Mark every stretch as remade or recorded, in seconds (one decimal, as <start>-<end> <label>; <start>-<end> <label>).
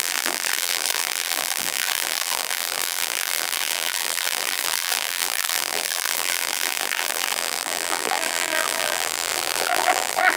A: 0.0-10.4 remade